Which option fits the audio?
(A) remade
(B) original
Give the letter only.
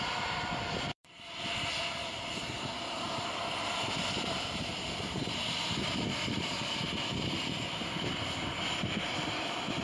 A